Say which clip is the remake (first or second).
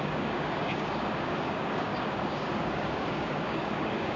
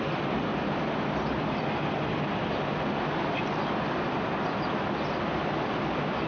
first